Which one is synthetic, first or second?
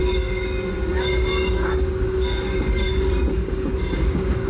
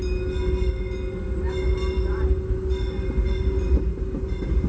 first